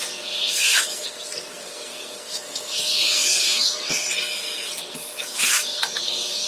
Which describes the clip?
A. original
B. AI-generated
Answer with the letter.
B